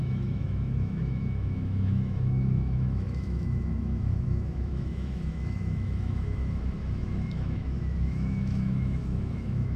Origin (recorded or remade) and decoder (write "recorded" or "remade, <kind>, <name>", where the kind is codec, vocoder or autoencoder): remade, autoencoder, DAC-VAE